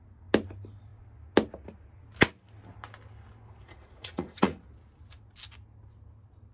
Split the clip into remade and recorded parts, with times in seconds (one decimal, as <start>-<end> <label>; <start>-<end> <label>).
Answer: 0.0-3.6 recorded; 3.6-4.6 remade; 4.6-6.5 recorded